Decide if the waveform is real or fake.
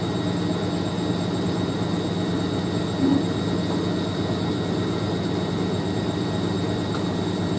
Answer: real